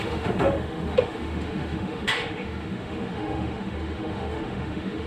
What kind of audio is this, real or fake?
fake